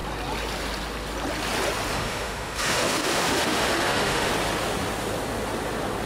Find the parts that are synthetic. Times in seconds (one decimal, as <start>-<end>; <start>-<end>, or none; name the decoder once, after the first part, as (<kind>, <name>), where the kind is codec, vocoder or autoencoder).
1.9-4.3 (autoencoder, DAC-VAE)